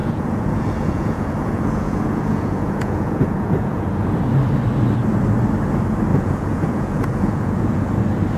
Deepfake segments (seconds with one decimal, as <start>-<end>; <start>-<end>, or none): 0.0-4.2; 6.1-7.8